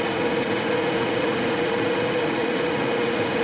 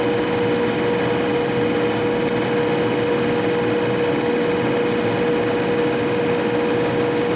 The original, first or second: second